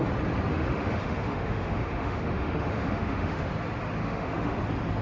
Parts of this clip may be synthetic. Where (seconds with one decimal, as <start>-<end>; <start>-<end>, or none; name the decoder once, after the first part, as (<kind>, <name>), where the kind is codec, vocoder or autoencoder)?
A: 0.5-3.5 (autoencoder, DAC-VAE); 4.0-4.6